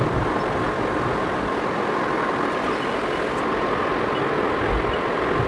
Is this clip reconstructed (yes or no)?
no